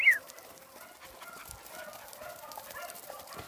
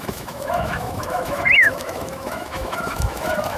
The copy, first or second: second